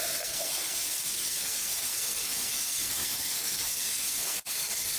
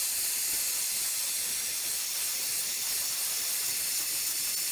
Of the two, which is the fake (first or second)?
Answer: first